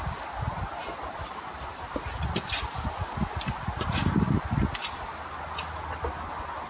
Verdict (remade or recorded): recorded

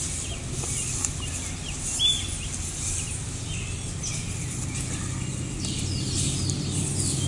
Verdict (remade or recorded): recorded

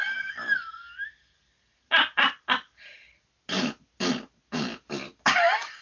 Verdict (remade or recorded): recorded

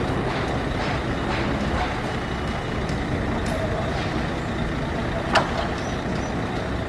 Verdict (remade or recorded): recorded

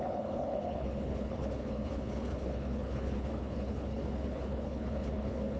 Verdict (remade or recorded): remade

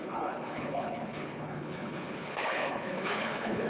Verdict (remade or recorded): remade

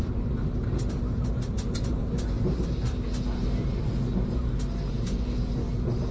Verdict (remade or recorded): recorded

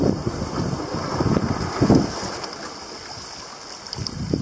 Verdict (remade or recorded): recorded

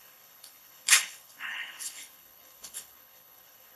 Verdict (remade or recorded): remade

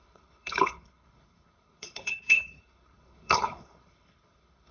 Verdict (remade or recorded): remade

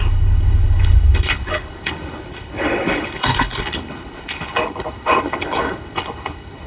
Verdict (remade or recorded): remade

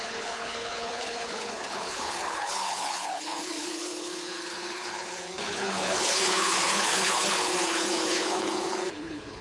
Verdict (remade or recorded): remade